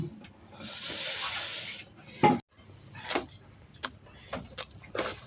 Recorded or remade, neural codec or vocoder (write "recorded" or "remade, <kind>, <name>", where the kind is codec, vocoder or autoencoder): recorded